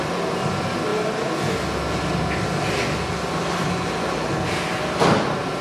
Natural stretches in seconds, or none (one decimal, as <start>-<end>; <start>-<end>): 0.0-5.6